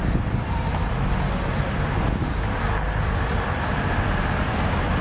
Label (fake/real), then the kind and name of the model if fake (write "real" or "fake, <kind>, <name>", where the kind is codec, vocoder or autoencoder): real